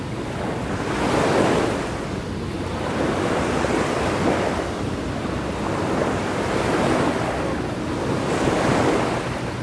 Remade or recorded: recorded